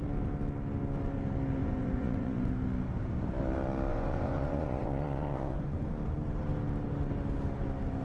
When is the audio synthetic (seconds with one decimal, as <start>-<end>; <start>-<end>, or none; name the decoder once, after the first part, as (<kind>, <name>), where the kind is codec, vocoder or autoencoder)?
1.6-2.5 (vocoder, Vocos); 3.9-5.9